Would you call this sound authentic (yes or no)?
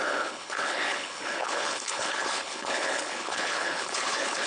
no